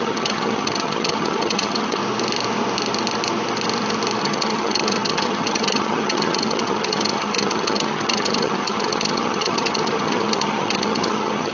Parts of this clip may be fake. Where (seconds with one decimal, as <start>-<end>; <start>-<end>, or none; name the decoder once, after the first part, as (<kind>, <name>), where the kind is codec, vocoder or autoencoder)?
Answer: 0.0-2.0 (vocoder, HiFi-GAN); 4.2-11.5